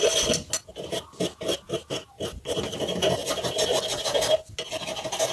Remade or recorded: recorded